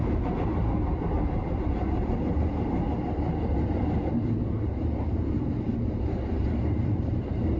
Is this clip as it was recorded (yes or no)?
no